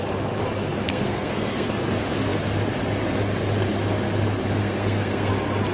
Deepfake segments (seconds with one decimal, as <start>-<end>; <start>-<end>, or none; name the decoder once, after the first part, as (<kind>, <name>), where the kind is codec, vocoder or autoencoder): 0.9-1.7 (codec, SNAC); 4.6-5.3